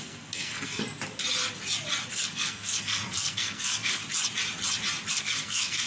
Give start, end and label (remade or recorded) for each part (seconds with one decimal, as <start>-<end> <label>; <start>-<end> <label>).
0.0-0.8 remade; 0.8-2.1 recorded; 2.1-4.0 remade; 4.0-5.1 recorded; 5.1-5.9 remade